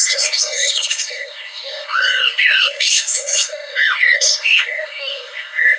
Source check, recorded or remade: remade